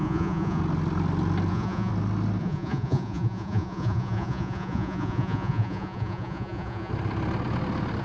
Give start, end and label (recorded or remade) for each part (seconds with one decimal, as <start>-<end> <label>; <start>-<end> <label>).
0.0-0.6 remade; 0.6-1.5 recorded; 1.5-1.9 remade; 1.9-2.4 recorded; 2.4-6.9 remade; 6.9-8.0 recorded